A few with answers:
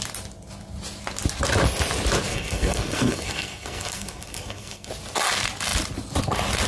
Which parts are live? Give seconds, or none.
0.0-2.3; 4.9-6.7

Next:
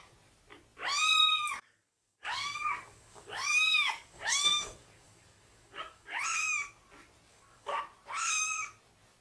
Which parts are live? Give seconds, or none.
0.0-1.6; 6.2-7.3; 7.8-9.2